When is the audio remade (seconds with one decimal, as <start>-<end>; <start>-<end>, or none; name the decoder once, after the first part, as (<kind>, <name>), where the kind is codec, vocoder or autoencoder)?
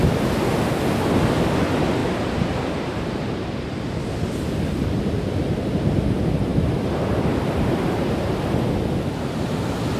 2.0-4.1 (vocoder, BigVGAN v2)